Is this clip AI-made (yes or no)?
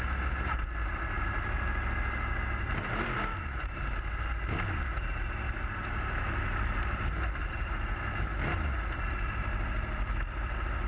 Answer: no